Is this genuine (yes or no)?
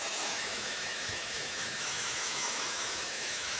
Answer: no